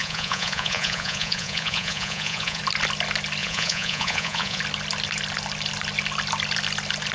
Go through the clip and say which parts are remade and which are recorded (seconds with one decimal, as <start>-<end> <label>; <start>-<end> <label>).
0.0-2.6 remade; 2.6-3.4 recorded; 3.4-4.6 remade; 4.6-7.1 recorded